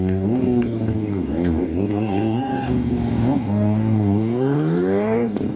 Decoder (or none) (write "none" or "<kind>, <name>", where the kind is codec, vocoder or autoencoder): codec, DAC